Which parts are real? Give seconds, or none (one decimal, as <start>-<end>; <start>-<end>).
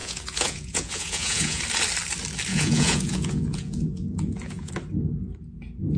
1.6-2.5; 4.7-6.0